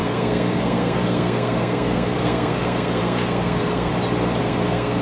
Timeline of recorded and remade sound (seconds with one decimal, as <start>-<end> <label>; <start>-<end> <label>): 0.0-3.9 remade; 3.9-4.4 recorded; 4.4-5.0 remade

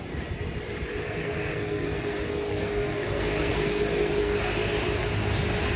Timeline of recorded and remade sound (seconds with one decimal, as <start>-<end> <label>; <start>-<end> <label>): 0.0-1.0 recorded; 1.0-4.5 remade; 4.5-5.8 recorded

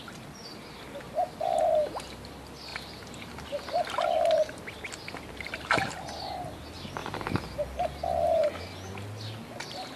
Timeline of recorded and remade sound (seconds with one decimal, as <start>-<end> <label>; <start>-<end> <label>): 0.0-10.0 recorded

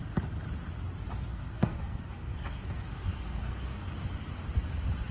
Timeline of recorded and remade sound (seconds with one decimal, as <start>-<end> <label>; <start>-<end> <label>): 0.0-1.3 recorded; 1.3-3.9 remade; 3.9-5.1 recorded

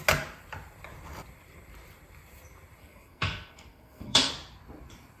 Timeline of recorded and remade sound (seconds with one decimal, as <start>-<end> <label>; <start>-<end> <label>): 0.0-2.8 recorded; 2.8-4.3 remade; 4.3-5.2 recorded

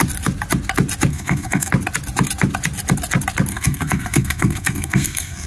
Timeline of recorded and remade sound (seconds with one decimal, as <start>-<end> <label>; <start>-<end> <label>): 0.0-1.1 recorded; 1.1-1.7 remade; 1.7-3.5 recorded; 3.5-5.5 remade